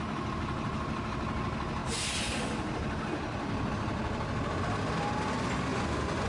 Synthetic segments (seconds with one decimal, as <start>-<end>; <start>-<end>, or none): 5.7-6.3